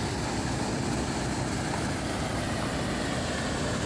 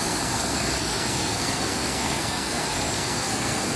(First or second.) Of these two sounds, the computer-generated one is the second